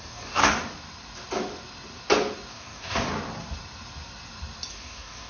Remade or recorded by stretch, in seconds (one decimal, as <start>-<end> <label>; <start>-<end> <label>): 0.0-0.4 remade; 0.4-2.5 recorded; 2.5-3.1 remade; 3.1-4.7 recorded; 4.7-5.3 remade

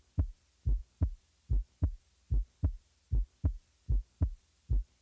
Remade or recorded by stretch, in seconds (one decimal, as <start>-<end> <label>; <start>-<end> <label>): 0.0-5.0 recorded

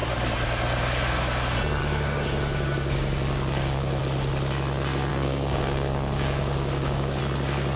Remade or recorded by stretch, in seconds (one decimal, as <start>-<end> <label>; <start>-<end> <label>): 0.0-1.8 recorded; 1.8-4.0 remade; 4.0-5.1 recorded; 5.1-7.2 remade; 7.2-7.8 recorded

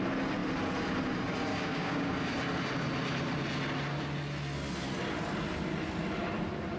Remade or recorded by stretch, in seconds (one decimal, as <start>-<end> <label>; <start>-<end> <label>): 0.0-1.5 recorded; 1.5-2.1 remade; 2.1-6.8 recorded

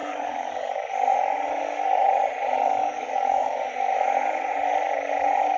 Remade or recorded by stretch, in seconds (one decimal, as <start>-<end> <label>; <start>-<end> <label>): 0.0-0.5 remade; 0.5-2.8 recorded; 2.8-3.8 remade; 3.8-5.6 recorded

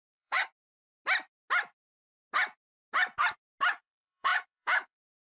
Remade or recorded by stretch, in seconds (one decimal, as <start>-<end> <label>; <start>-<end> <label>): 0.0-0.5 remade; 0.5-3.7 recorded; 3.7-5.3 remade